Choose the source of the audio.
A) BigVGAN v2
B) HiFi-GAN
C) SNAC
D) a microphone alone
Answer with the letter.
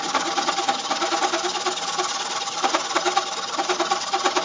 D